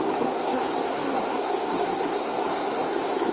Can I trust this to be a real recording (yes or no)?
no